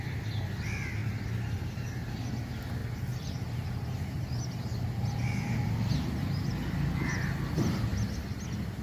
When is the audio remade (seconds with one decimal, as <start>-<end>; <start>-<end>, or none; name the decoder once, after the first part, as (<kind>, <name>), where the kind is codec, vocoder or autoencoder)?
none